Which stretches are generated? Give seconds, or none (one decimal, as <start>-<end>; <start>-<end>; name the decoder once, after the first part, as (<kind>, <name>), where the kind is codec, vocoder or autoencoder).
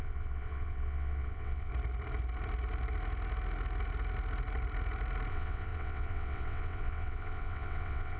0.0-1.7 (vocoder, WaveNeXt); 5.3-8.2